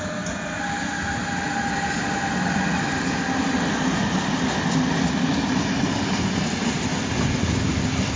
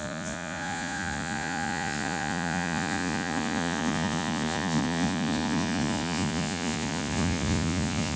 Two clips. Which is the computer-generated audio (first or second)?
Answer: second